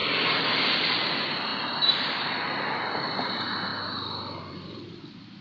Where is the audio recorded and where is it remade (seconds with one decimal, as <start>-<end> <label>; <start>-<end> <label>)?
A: 0.0-5.4 recorded